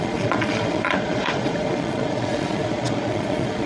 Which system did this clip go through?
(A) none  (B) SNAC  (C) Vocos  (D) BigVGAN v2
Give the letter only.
C